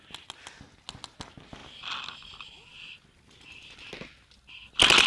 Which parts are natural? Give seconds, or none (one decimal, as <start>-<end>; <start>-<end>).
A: 0.0-5.1